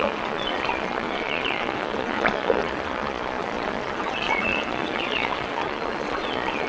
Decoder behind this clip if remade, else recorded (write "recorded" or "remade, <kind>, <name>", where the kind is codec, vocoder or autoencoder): remade, vocoder, Vocos